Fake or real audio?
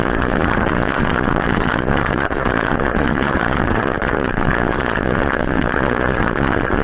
fake